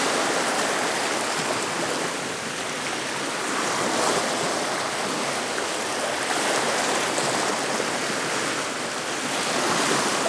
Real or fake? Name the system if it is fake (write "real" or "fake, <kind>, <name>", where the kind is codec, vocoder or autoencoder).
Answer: real